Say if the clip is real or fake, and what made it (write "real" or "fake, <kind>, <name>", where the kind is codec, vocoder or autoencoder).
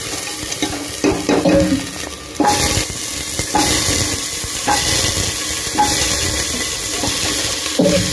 real